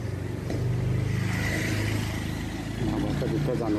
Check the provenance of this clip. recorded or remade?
recorded